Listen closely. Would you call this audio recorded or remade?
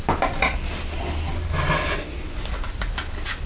recorded